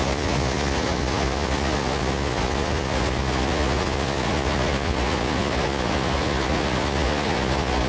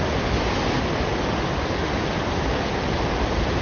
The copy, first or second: first